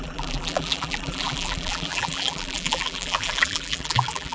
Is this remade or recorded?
remade